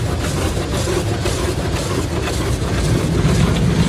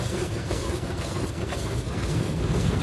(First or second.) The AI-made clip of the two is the second